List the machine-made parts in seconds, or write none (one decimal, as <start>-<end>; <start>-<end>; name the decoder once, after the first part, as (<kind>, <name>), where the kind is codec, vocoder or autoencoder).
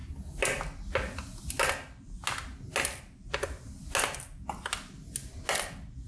none